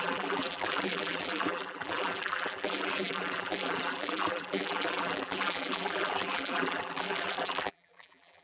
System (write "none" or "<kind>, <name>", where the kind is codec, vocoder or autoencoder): vocoder, BigVGAN v2